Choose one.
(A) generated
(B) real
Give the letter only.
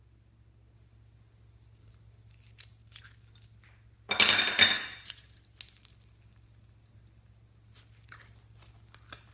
B